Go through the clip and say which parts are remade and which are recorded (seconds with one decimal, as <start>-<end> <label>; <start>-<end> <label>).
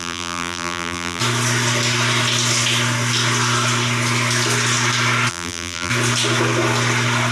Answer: 0.0-1.2 remade; 1.2-5.3 recorded; 5.3-5.9 remade; 5.9-7.3 recorded